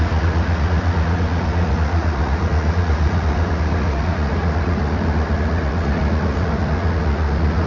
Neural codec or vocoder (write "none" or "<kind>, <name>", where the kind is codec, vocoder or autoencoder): vocoder, Vocos